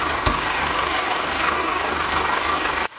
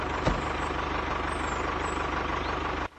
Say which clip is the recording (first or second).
second